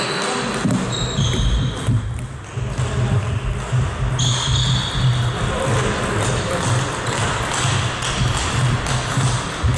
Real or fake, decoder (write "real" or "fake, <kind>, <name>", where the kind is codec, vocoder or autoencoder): real